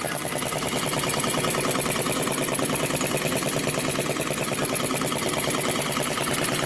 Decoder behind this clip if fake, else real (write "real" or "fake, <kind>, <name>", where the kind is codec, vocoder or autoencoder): real